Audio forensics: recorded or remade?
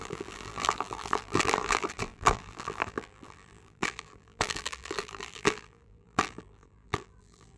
remade